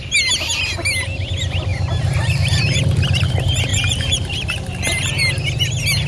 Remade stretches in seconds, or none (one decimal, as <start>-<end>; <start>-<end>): 1.7-2.8; 3.7-5.3